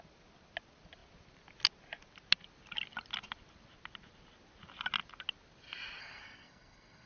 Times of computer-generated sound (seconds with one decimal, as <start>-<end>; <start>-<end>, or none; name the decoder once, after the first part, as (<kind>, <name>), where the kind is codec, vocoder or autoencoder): 6.0-7.1 (codec, SNAC)